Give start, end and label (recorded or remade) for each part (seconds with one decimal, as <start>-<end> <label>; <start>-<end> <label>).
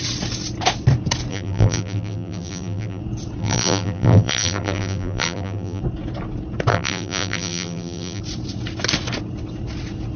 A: 0.0-1.3 recorded; 1.3-3.0 remade; 3.0-3.4 recorded; 3.4-5.8 remade; 5.8-6.7 recorded; 6.7-8.2 remade; 8.2-10.2 recorded